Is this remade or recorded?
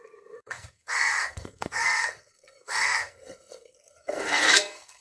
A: remade